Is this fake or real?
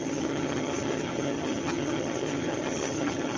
fake